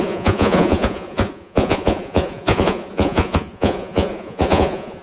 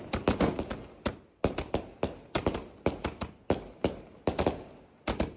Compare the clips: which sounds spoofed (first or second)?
first